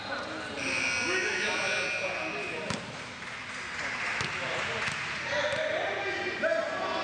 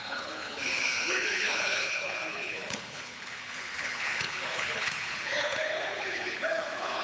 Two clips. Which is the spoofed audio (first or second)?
second